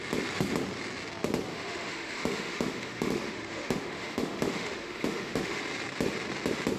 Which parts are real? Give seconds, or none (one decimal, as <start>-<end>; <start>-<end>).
0.0-1.5; 5.6-6.8